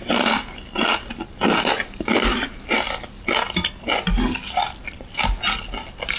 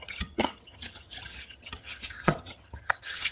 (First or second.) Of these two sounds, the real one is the first